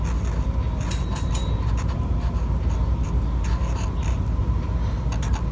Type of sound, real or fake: real